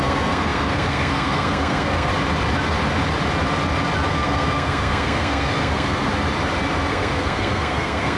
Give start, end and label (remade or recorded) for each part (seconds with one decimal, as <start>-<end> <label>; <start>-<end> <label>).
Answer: 0.0-2.1 remade; 2.1-4.1 recorded; 4.1-6.1 remade; 6.1-6.9 recorded; 6.9-8.2 remade